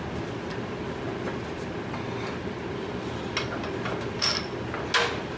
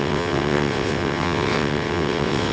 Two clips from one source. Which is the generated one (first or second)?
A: second